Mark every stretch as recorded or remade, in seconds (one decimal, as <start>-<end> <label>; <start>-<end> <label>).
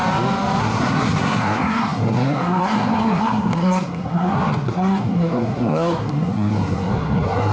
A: 0.0-0.6 recorded; 0.6-7.5 remade